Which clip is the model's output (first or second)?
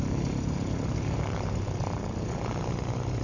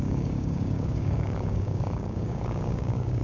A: second